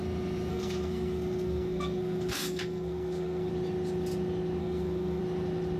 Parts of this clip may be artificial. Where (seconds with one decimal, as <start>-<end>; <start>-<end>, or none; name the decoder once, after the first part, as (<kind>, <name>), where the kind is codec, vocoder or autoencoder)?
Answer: 0.5-3.5 (codec, SNAC); 4.6-5.2